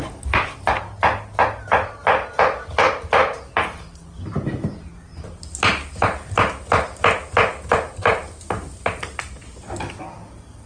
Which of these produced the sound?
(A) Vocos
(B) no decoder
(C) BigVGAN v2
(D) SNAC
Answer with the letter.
B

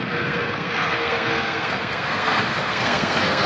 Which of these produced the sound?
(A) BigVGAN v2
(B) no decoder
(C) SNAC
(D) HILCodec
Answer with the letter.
C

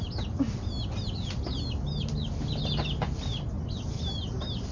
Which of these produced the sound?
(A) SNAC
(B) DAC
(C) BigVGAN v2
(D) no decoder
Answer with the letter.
D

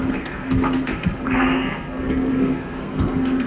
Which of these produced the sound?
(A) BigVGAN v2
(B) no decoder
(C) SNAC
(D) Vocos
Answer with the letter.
C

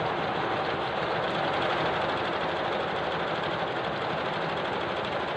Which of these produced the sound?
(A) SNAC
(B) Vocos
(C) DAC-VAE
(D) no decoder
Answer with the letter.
D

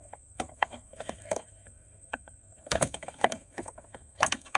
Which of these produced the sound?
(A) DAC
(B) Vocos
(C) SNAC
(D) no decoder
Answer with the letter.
C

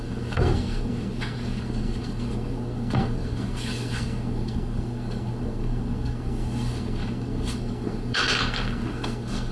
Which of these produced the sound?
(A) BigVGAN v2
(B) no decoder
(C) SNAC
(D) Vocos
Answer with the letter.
C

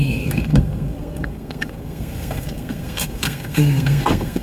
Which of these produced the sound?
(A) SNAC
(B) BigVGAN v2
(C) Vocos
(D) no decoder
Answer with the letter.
A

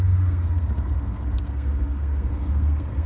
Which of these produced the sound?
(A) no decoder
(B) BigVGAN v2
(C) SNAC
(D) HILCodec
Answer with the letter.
C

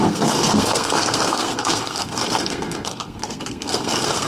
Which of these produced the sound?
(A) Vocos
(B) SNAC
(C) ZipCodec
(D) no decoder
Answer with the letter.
B